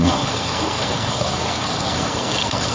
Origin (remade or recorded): remade